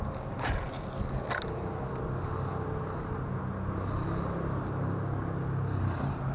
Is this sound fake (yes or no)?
no